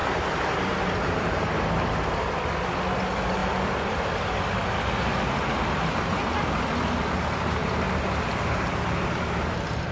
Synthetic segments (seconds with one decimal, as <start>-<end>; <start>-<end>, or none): 0.0-2.1; 3.4-4.4; 5.1-6.4; 7.6-9.9